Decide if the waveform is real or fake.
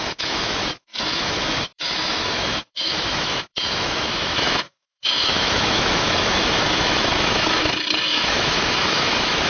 fake